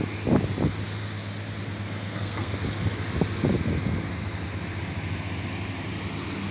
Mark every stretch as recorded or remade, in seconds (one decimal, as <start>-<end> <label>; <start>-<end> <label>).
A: 0.0-1.8 recorded; 1.8-2.5 remade; 2.5-6.5 recorded